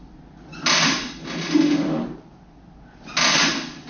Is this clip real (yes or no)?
yes